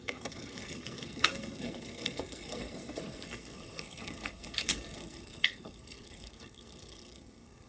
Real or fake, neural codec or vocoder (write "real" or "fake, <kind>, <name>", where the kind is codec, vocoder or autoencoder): fake, codec, SNAC